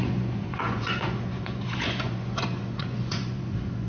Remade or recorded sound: remade